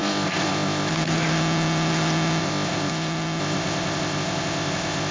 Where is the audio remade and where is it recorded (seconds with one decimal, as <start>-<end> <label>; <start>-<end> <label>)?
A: 0.0-0.9 remade; 0.9-2.4 recorded; 2.4-2.9 remade; 2.9-3.4 recorded; 3.4-5.1 remade